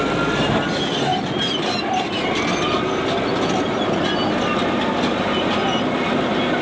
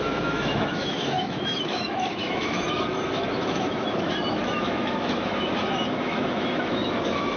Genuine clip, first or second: first